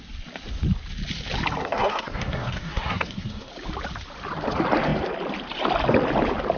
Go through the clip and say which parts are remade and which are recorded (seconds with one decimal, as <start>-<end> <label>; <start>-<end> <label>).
0.0-1.6 recorded; 1.6-3.5 remade; 3.5-6.6 recorded